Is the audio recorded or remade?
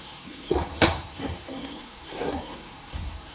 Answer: remade